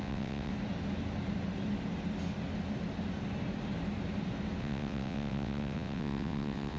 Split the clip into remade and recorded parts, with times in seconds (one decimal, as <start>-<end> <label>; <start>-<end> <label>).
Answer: 0.0-0.5 remade; 0.5-4.6 recorded; 4.6-6.8 remade